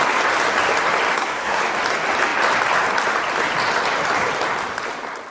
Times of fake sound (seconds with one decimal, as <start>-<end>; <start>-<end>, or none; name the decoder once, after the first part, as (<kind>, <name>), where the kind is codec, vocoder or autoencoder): 1.1-1.6 (codec, SNAC)